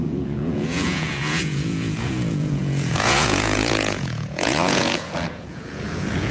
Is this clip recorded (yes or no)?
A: no